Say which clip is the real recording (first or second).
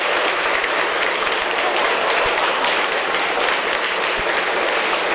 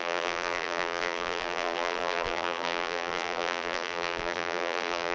first